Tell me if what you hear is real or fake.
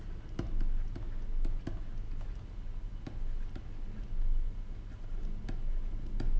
real